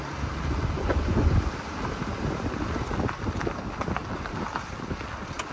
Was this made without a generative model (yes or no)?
yes